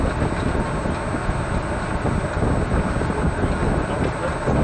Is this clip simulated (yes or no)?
no